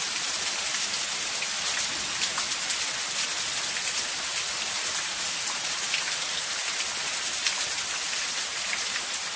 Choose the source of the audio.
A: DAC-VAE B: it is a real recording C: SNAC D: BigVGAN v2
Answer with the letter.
B